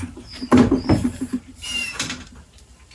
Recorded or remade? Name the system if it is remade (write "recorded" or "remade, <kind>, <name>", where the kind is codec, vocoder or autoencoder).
remade, vocoder, BigVGAN v2